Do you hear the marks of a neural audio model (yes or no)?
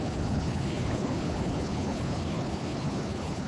yes